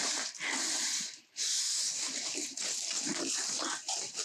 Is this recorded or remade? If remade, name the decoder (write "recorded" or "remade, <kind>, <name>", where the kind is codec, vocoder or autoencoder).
remade, vocoder, BigVGAN v2